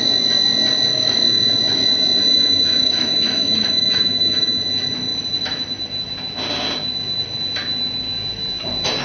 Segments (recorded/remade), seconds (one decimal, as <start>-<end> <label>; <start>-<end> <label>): 0.0-0.9 recorded; 0.9-1.6 remade; 1.6-2.2 recorded; 2.2-4.6 remade; 4.6-9.0 recorded